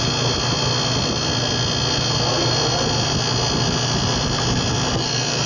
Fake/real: real